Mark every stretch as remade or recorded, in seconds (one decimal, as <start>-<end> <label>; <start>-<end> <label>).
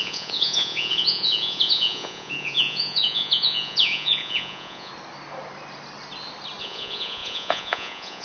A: 0.0-4.9 remade; 4.9-6.6 recorded; 6.6-8.2 remade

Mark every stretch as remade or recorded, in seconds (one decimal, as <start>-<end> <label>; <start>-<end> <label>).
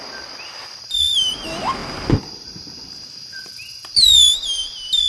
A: 0.0-5.1 recorded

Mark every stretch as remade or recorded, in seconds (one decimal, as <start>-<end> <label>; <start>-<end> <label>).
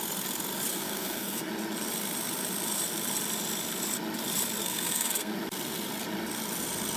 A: 0.0-0.7 recorded; 0.7-1.5 remade; 1.5-4.6 recorded; 4.6-5.3 remade; 5.3-7.0 recorded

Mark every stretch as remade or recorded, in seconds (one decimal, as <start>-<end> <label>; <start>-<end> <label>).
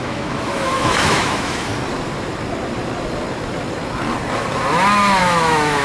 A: 0.0-1.7 remade; 1.7-5.2 recorded; 5.2-5.8 remade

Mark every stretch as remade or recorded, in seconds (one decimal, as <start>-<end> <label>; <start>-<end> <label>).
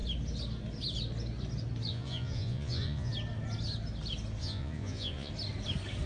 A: 0.0-1.9 recorded; 1.9-3.1 remade; 3.1-4.4 recorded; 4.4-5.3 remade; 5.3-6.1 recorded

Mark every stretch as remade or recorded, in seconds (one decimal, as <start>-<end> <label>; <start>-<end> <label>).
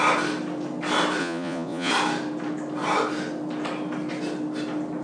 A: 0.0-1.2 recorded; 1.2-1.9 remade; 1.9-5.0 recorded